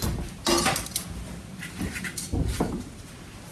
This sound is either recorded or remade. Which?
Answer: recorded